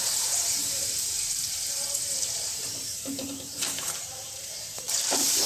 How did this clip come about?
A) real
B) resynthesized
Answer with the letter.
B